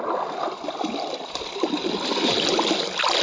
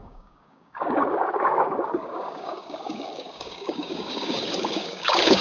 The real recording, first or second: first